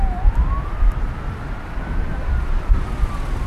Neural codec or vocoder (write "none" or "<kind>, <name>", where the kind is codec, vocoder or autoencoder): none